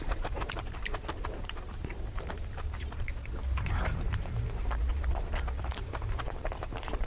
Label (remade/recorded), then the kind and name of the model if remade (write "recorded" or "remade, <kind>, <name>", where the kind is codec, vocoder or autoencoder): remade, vocoder, BigVGAN v2